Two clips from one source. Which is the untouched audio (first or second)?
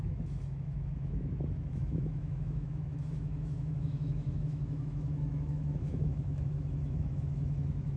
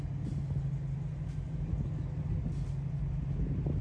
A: second